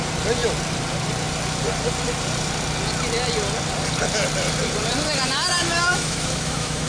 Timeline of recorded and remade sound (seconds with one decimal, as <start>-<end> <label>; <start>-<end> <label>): 0.0-5.6 recorded; 5.6-6.9 remade